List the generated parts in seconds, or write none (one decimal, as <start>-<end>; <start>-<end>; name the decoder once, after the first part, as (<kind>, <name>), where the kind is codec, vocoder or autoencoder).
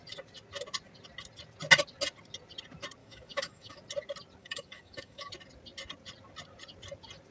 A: 3.0-3.8 (autoencoder, DAC-VAE); 4.4-5.3